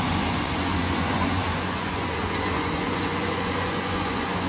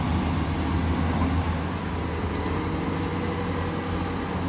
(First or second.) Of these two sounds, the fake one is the first